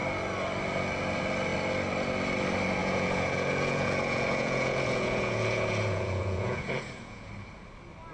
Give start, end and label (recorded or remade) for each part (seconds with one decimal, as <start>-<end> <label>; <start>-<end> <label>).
0.0-2.8 recorded; 2.8-7.3 remade; 7.3-8.1 recorded